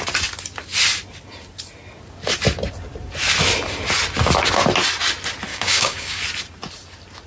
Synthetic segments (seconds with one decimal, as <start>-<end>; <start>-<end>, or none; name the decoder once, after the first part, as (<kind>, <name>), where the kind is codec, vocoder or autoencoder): 5.5-6.2 (codec, DAC)